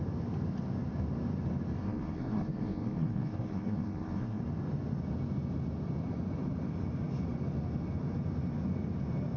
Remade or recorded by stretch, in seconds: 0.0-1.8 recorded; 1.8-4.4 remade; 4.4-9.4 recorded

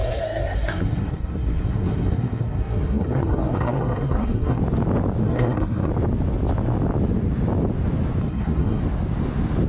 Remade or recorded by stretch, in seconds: 0.0-4.6 remade; 4.6-5.2 recorded; 5.2-5.9 remade; 5.9-8.2 recorded; 8.2-8.8 remade; 8.8-9.7 recorded

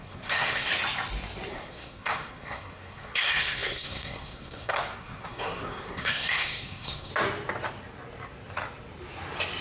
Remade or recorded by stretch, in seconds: 0.0-0.7 remade; 0.7-1.5 recorded; 1.5-7.1 remade; 7.1-9.6 recorded

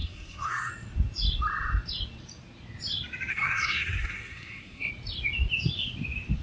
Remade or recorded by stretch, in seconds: 0.0-0.7 remade; 0.7-3.3 recorded; 3.3-4.9 remade; 4.9-6.4 recorded

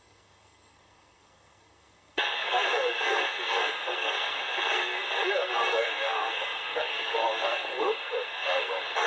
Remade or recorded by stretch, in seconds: 0.0-9.1 remade

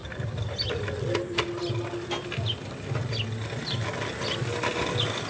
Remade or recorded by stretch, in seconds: 0.0-5.3 recorded